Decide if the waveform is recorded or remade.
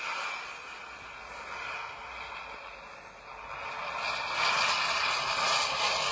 recorded